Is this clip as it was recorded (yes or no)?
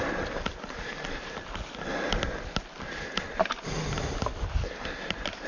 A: yes